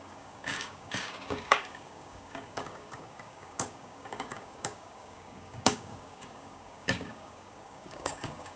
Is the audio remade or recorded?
remade